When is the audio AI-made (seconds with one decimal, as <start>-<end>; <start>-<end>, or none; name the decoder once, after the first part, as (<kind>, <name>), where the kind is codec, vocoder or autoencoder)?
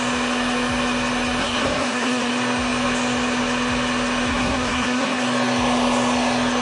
1.4-2.3 (codec, SNAC); 4.3-5.2